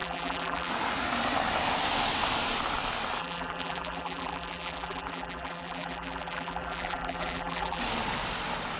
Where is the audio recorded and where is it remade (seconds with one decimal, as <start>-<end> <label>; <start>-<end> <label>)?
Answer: 0.0-0.7 remade; 0.7-3.2 recorded; 3.2-7.8 remade; 7.8-8.8 recorded